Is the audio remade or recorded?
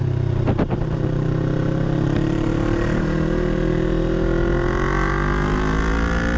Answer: recorded